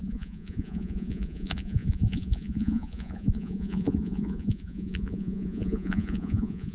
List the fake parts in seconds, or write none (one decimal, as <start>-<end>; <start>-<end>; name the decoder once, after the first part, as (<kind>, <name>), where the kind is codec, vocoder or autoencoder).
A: 0.0-6.7 (vocoder, Vocos)